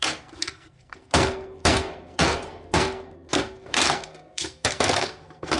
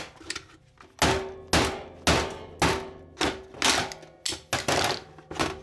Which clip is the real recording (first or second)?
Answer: second